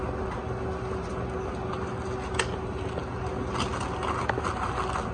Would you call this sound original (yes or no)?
yes